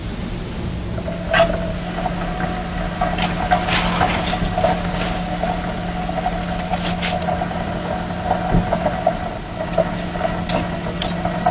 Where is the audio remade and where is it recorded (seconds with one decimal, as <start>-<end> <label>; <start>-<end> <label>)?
0.0-11.5 recorded